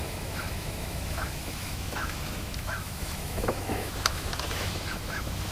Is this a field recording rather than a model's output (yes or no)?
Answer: no